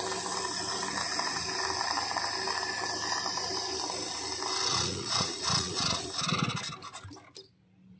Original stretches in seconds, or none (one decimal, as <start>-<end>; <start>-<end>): 0.0-4.7; 6.0-8.0